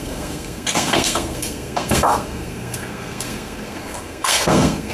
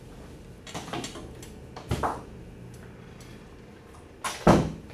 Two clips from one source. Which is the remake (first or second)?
first